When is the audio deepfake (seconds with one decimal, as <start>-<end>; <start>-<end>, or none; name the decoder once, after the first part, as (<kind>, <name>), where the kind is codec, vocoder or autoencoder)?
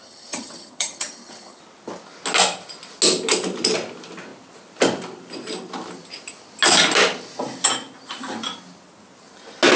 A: 0.0-1.6 (vocoder, HiFi-GAN)